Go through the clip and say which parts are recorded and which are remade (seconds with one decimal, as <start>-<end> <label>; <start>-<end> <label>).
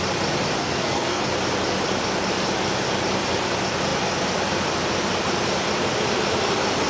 0.0-0.6 recorded; 0.6-1.2 remade; 1.2-6.9 recorded